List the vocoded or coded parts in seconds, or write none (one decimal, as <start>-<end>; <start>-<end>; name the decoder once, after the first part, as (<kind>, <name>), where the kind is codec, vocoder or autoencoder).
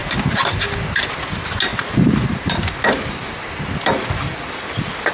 1.7-5.1 (vocoder, BigVGAN v2)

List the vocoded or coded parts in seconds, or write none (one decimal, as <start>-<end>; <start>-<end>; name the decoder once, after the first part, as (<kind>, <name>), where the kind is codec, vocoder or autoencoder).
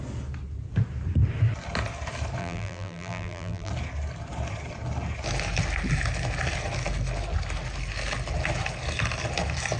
2.4-3.7 (vocoder, BigVGAN v2)